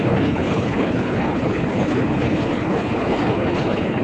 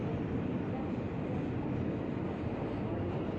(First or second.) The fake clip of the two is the first